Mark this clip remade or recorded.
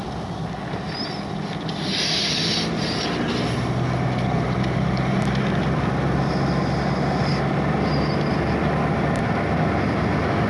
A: recorded